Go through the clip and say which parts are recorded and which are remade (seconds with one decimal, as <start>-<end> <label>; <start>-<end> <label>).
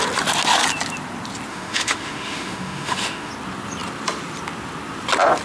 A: 0.0-1.5 recorded; 1.5-3.3 remade; 3.3-5.4 recorded